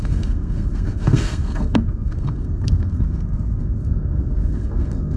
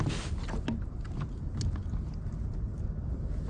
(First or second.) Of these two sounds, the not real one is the first